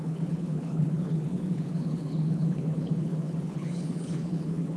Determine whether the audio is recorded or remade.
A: remade